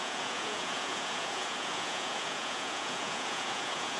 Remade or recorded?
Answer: remade